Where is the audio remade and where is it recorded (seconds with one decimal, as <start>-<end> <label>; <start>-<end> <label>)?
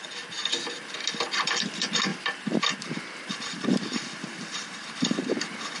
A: 0.0-2.1 recorded; 2.1-5.8 remade